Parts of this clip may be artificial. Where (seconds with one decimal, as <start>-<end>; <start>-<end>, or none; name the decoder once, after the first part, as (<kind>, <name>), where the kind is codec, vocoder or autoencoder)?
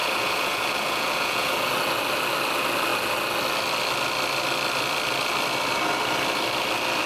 0.0-1.7 (vocoder, Vocos)